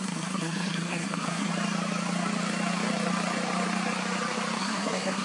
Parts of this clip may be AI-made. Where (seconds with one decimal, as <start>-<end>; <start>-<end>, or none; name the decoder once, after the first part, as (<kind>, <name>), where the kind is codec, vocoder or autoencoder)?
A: 0.0-1.5 (codec, SNAC); 4.6-5.2